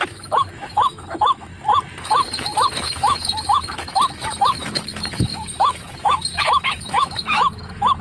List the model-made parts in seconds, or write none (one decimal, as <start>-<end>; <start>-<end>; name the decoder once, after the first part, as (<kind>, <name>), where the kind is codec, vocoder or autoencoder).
0.0-1.5 (autoencoder, DAC-VAE); 2.0-8.0